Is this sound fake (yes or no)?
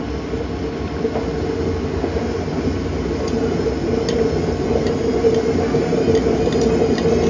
no